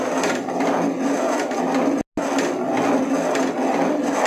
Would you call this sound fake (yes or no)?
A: no